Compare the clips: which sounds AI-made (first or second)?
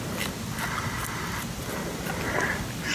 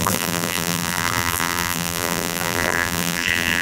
second